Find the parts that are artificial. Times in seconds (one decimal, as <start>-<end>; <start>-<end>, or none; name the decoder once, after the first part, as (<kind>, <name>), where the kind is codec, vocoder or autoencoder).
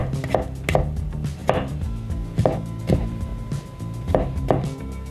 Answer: 0.8-1.4 (vocoder, BigVGAN v2); 2.8-3.3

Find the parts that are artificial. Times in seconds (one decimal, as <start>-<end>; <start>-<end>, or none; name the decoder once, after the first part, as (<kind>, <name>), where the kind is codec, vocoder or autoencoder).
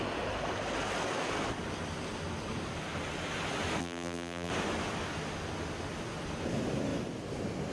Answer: 3.8-4.5 (vocoder, BigVGAN v2)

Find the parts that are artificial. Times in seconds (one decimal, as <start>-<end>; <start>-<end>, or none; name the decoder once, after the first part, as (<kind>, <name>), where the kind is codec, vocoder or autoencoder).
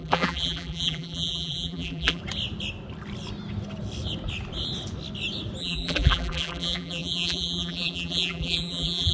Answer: 0.0-2.2 (vocoder, BigVGAN v2); 5.6-9.1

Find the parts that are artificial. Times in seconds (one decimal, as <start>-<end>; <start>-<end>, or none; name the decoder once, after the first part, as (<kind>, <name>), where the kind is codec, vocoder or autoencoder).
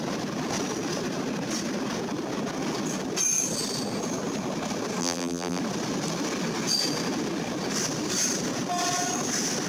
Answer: 5.0-5.6 (vocoder, BigVGAN v2)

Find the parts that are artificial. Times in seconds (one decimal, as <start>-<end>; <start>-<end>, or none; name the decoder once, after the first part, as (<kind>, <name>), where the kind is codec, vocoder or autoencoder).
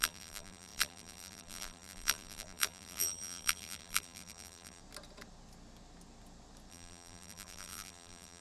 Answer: 0.0-4.8 (vocoder, BigVGAN v2); 6.7-8.4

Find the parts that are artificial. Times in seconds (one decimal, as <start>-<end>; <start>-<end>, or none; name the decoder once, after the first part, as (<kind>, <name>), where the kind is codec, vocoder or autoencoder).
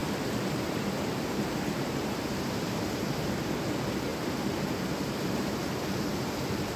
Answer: 0.0-3.0 (vocoder, BigVGAN v2); 4.1-6.3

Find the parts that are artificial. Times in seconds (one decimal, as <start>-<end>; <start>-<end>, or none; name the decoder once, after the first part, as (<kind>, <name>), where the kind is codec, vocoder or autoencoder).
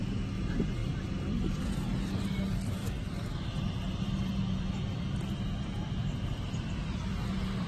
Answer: 0.8-1.5 (vocoder, BigVGAN v2); 2.8-7.7